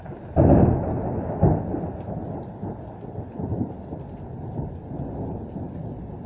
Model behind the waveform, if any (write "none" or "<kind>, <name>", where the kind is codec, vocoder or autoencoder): none